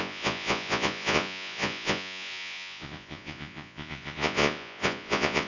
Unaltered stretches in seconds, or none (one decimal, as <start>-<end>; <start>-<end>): none

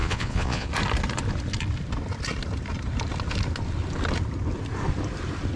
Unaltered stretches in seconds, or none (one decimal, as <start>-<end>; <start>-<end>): 0.7-5.6

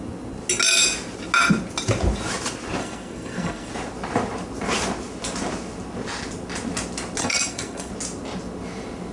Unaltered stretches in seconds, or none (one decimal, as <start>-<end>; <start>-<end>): 0.0-2.8; 3.7-7.2; 7.9-9.1

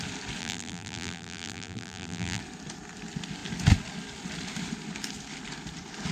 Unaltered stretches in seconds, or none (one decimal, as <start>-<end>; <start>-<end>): 0.0-0.4; 2.4-6.1